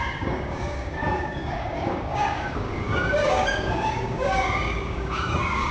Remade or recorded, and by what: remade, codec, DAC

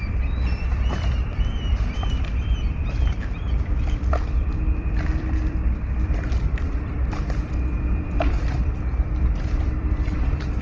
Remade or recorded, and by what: remade, vocoder, BigVGAN v2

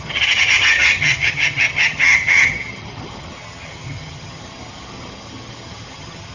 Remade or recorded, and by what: remade, vocoder, HiFi-GAN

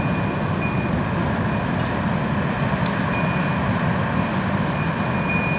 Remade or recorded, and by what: recorded